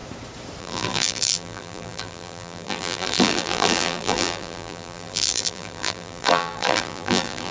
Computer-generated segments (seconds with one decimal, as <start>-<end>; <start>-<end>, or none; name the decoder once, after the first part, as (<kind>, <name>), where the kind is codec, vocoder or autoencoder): 0.6-7.5 (vocoder, BigVGAN v2)